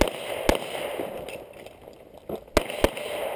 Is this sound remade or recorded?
recorded